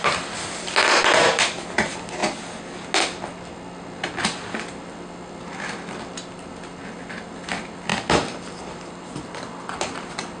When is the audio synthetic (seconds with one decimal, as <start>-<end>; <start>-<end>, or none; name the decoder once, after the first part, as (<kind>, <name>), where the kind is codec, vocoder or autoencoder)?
none